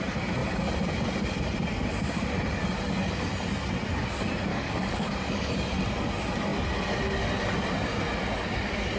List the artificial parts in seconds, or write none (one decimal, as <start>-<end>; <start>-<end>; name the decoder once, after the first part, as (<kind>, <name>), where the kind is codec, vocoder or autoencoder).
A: 4.5-5.5 (codec, DAC)

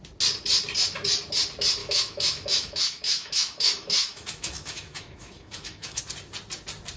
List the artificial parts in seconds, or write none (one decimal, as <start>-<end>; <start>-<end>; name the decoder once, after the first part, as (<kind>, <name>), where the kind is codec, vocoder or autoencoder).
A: 1.8-6.0 (autoencoder, DAC-VAE)

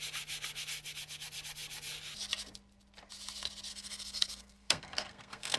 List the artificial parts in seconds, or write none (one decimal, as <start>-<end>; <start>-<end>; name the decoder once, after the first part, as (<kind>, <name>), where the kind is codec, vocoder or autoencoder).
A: 3.7-5.6 (codec, SNAC)

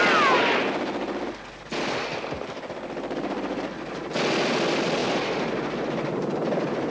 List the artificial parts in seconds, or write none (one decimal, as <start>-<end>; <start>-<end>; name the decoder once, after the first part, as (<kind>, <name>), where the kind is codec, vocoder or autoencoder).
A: none

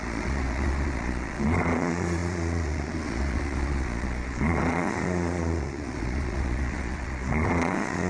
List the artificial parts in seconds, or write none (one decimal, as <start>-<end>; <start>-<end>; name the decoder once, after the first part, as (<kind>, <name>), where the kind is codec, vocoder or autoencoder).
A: 0.0-8.1 (vocoder, Vocos)

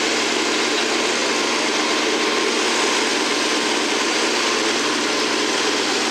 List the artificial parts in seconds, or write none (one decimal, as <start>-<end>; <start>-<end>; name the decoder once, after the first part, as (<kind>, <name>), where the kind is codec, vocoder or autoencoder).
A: 3.1-5.1 (vocoder, BigVGAN v2)